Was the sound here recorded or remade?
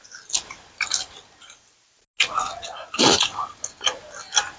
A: recorded